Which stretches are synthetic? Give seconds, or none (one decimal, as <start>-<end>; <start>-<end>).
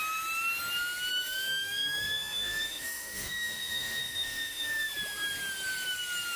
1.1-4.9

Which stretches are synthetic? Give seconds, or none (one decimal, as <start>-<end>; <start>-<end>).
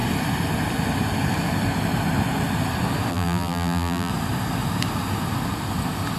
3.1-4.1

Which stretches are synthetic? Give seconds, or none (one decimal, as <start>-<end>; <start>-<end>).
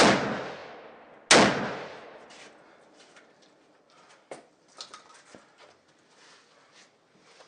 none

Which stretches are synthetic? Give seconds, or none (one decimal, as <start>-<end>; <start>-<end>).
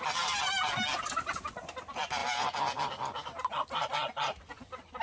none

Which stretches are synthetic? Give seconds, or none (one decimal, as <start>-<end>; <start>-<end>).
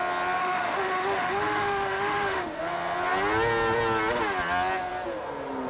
0.4-2.6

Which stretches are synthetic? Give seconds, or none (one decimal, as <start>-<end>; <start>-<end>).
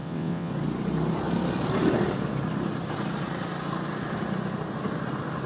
0.0-0.5